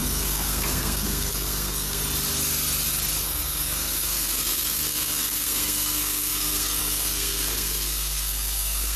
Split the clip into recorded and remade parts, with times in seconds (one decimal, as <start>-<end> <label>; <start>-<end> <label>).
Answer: 0.0-2.0 remade; 2.0-3.2 recorded; 3.2-9.0 remade